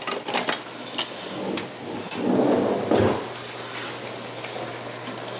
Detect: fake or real real